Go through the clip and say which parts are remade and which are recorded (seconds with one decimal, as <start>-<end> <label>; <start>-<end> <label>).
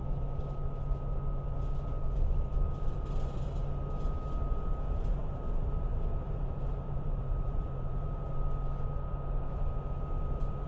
0.0-5.2 recorded; 5.2-8.3 remade; 8.3-10.7 recorded